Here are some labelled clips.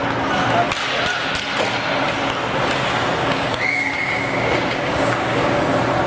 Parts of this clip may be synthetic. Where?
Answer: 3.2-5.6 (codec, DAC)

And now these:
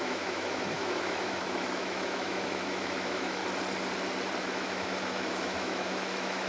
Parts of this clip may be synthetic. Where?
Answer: 0.0-3.4 (autoencoder, DAC-VAE); 4.4-6.5

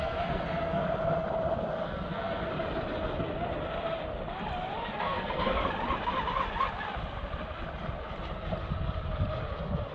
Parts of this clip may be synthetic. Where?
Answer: 0.0-0.8 (codec, SNAC); 1.7-2.5; 5.0-5.6